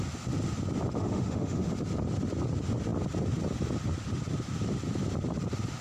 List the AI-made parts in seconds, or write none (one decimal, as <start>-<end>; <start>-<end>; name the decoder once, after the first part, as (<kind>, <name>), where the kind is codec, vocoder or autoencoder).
1.0-1.7 (autoencoder, DAC-VAE)

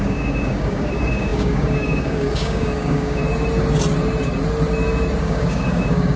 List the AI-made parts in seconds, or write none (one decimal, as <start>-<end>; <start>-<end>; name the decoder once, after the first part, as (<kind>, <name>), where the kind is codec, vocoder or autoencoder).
0.0-3.2 (codec, DAC); 5.2-6.2

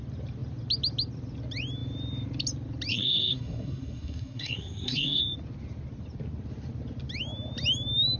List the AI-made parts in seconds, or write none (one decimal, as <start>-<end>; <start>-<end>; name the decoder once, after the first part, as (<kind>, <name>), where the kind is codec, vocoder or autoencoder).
2.9-5.2 (codec, SNAC)

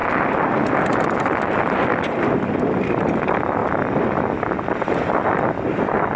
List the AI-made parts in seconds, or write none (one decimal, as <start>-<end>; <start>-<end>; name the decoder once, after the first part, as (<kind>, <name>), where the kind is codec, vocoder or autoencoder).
none

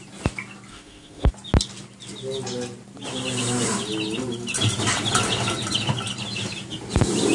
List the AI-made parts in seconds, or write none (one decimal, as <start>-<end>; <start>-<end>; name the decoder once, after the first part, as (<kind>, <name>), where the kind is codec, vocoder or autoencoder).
0.7-1.3 (autoencoder, DAC-VAE)

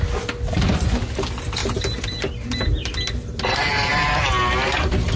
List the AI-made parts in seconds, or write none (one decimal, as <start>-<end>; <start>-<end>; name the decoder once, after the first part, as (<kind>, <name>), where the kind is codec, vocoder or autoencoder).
none

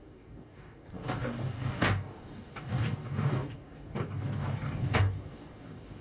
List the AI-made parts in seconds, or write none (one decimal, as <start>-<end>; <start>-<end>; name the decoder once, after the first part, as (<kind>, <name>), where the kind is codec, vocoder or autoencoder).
0.0-6.0 (codec, DAC)